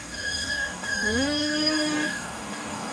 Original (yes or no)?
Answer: no